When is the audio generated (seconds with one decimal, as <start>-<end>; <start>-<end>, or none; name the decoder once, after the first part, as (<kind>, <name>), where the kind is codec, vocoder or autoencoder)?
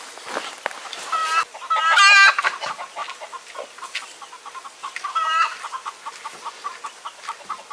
3.0-4.0 (vocoder, BigVGAN v2)